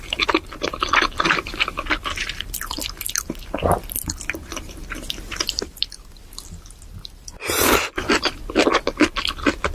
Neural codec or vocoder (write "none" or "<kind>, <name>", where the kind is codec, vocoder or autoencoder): none